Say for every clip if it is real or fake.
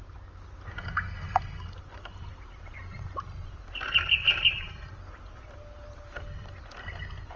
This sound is real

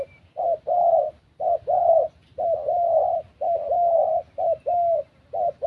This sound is real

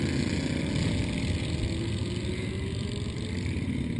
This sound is real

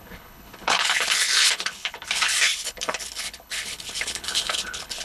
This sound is fake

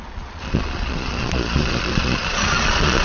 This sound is fake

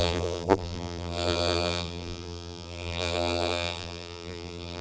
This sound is fake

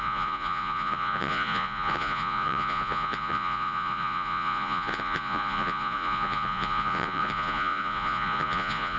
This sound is fake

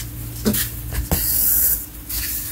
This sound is real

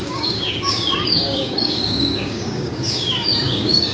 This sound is fake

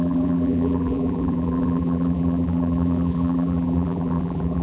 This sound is fake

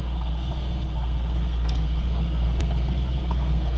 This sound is fake